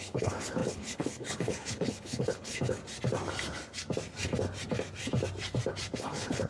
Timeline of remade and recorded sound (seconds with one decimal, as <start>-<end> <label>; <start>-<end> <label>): 0.0-2.8 remade; 2.8-6.0 recorded; 6.0-6.5 remade